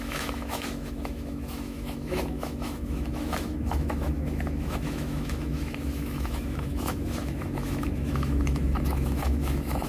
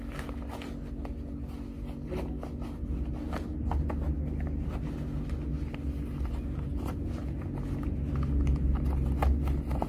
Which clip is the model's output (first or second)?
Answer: first